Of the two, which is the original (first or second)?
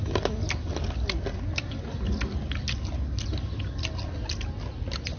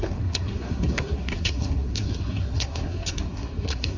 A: first